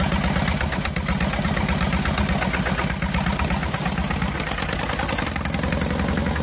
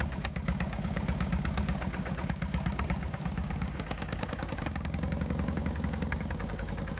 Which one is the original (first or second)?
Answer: first